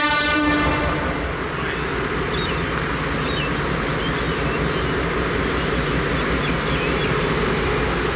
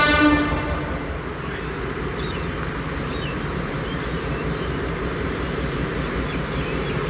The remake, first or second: second